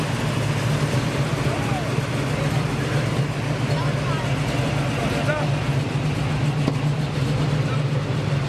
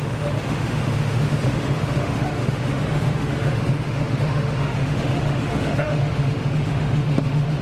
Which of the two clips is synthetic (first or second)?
second